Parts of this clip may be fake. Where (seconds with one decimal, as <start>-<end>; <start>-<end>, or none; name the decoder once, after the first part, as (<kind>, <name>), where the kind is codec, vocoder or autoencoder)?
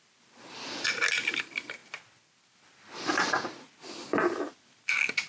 none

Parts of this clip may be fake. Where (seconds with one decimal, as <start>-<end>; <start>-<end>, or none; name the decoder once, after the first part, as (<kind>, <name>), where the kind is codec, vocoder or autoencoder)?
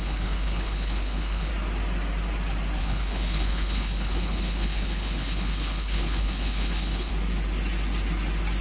0.0-1.5 (codec, HILCodec); 2.8-7.1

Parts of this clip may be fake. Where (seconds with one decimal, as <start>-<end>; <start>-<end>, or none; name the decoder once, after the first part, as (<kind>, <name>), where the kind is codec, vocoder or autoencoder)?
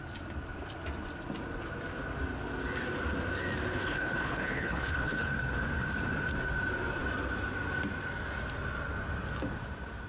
3.7-5.3 (codec, HILCodec)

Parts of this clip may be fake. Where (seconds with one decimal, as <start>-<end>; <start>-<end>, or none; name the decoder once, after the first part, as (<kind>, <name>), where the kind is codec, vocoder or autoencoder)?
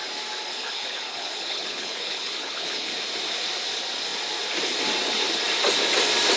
0.5-2.9 (codec, HILCodec)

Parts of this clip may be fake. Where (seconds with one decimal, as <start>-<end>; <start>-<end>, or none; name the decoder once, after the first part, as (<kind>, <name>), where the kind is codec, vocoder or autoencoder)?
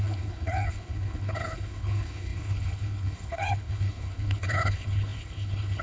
0.0-5.8 (codec, HILCodec)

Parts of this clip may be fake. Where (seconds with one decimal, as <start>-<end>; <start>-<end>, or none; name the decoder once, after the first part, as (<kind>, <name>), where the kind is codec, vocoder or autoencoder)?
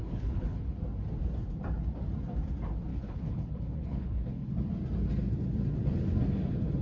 0.0-0.8 (codec, HILCodec); 2.9-4.5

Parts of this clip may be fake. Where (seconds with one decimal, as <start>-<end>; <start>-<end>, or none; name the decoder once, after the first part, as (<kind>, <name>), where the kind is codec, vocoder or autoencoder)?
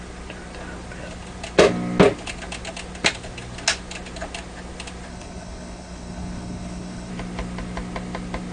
5.1-7.1 (codec, HILCodec)